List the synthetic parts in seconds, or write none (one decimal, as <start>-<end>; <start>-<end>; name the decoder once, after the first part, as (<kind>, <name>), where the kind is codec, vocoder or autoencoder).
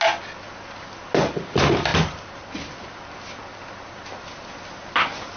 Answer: none